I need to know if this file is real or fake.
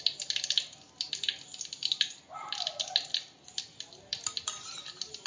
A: real